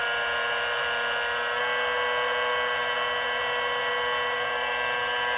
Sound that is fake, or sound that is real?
real